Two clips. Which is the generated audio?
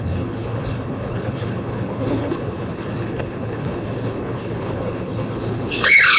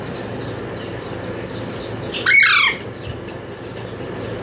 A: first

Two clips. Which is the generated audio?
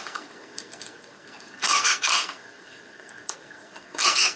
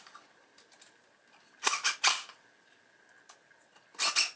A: first